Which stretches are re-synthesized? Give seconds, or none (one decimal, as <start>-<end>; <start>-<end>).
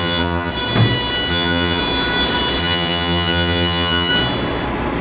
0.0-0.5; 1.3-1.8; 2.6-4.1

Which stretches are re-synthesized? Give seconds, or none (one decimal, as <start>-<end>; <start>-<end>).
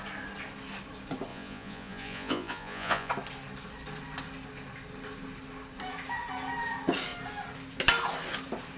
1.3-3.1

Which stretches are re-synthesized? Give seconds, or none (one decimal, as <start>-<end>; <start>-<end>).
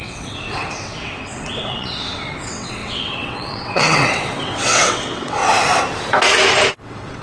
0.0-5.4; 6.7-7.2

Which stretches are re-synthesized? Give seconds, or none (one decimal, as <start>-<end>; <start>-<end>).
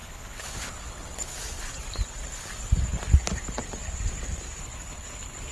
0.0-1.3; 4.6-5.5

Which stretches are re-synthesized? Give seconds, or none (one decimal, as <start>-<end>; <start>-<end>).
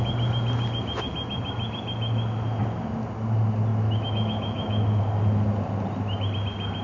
3.7-5.0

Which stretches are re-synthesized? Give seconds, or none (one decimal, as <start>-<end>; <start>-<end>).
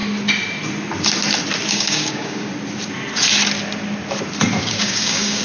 1.7-2.5; 4.6-5.4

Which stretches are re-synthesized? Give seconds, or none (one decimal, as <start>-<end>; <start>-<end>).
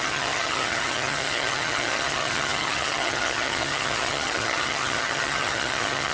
0.0-6.1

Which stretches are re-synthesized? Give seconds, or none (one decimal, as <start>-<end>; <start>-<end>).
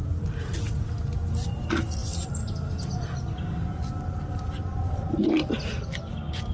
none